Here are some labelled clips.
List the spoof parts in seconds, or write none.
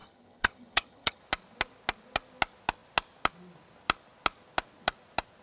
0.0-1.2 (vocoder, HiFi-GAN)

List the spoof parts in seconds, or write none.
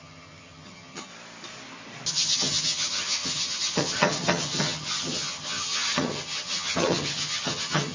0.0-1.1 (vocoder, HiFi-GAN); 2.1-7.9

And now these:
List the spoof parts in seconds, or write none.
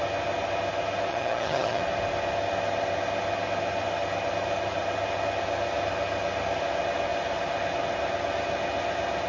1.1-1.8 (vocoder, HiFi-GAN)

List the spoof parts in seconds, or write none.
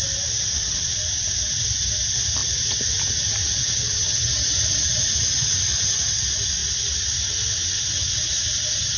3.6-4.3 (vocoder, HiFi-GAN)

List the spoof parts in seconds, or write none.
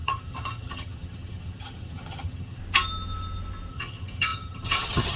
0.0-2.6 (vocoder, HiFi-GAN); 3.7-5.2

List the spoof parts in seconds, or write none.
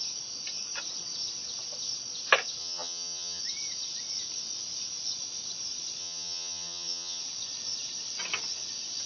2.6-3.4 (vocoder, HiFi-GAN); 6.0-7.2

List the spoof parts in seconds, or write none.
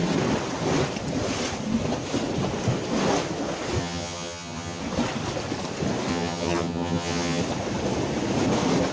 3.8-4.8 (vocoder, HiFi-GAN); 6.1-7.4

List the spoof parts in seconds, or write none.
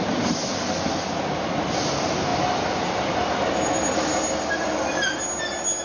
none